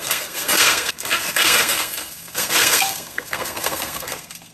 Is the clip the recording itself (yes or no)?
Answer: no